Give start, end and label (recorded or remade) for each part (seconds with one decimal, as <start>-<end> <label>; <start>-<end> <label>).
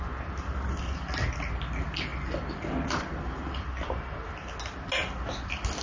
0.0-5.8 recorded